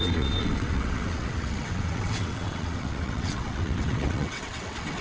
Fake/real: fake